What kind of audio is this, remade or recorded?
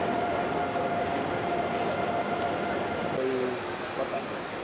recorded